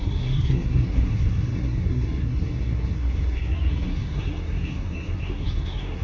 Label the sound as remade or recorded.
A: remade